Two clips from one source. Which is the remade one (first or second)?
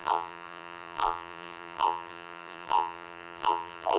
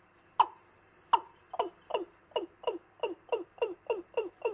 first